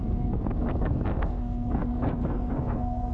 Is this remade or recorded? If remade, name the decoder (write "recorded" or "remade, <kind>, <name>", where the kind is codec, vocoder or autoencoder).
remade, codec, SNAC